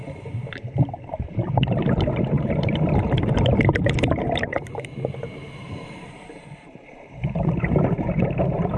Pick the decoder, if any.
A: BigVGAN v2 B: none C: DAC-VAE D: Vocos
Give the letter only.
A